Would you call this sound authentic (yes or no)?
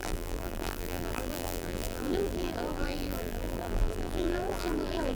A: no